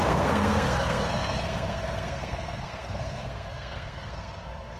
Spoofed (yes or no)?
yes